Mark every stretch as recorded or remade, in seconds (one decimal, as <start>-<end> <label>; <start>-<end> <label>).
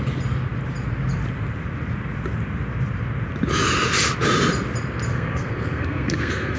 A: 0.0-5.1 recorded; 5.1-6.6 remade